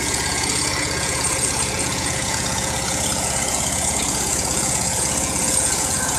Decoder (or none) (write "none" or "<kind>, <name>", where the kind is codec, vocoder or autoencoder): vocoder, Vocos